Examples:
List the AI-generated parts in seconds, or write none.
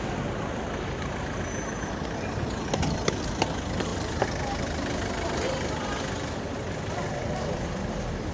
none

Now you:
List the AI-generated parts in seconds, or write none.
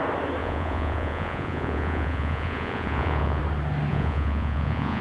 0.4-3.4 (vocoder, Vocos); 3.9-5.0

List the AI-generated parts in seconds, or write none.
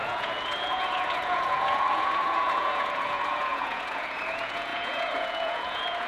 0.0-6.1 (vocoder, Vocos)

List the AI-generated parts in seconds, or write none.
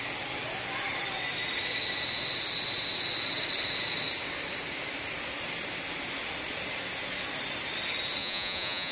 8.2-8.9 (vocoder, Vocos)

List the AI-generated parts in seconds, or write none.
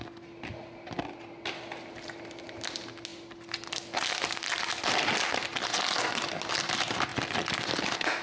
none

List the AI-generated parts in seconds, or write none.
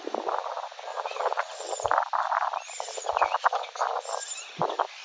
0.9-1.7 (vocoder, Vocos)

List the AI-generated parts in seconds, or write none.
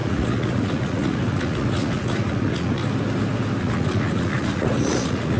0.0-2.8 (vocoder, Vocos); 3.6-5.4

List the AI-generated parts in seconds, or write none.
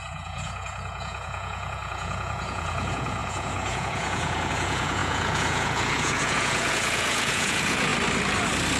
0.0-7.9 (vocoder, Vocos)